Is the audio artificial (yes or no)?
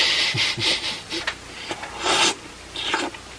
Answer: no